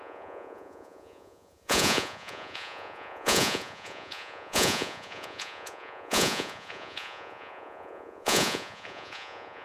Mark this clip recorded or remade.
remade